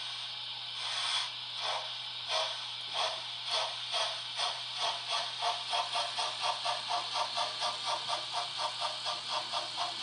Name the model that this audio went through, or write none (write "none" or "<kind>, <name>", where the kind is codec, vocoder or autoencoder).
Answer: none